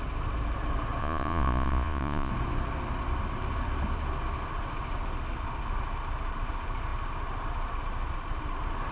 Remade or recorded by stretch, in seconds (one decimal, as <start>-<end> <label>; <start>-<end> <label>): 0.0-1.0 recorded; 1.0-2.3 remade; 2.3-8.9 recorded